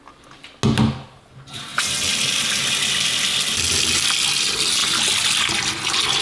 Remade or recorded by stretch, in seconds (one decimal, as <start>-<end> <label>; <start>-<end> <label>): 0.0-6.2 recorded